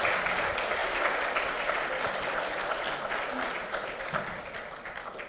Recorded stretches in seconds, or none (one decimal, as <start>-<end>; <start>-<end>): 0.0-5.3